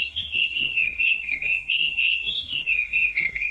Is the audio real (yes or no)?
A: no